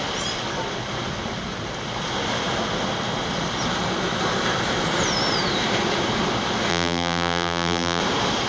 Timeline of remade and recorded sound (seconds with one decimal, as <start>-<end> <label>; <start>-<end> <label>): 0.0-6.7 recorded; 6.7-8.0 remade; 8.0-8.5 recorded